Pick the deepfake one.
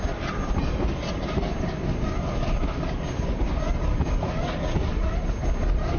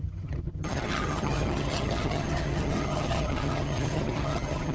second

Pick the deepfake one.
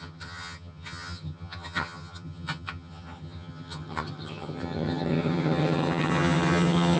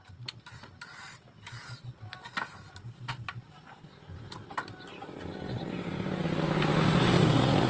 first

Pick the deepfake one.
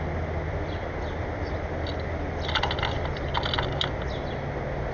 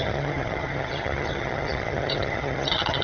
second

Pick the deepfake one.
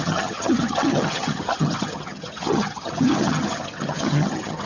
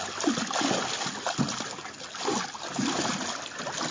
first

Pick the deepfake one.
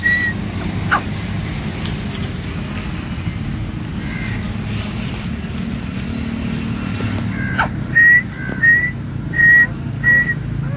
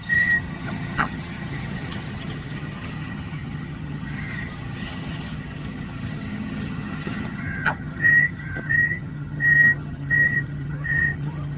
second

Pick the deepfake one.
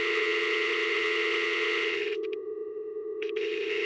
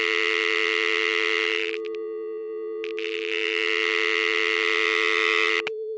first